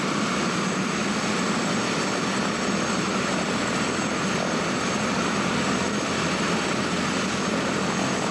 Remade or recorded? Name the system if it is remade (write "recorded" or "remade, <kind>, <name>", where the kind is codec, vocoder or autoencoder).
recorded